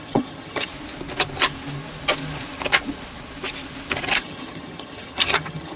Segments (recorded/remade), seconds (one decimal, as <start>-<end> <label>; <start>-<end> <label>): 0.0-0.7 remade; 0.7-4.2 recorded; 4.2-5.8 remade